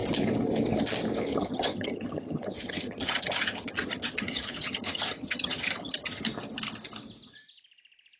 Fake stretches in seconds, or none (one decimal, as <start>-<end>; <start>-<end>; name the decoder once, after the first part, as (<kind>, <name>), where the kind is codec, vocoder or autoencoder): 1.3-6.2 (vocoder, HiFi-GAN)